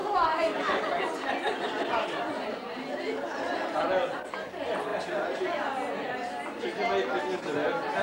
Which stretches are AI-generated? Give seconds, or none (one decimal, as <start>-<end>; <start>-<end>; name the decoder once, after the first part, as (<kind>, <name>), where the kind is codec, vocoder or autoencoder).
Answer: none